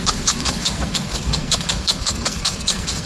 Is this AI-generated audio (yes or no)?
yes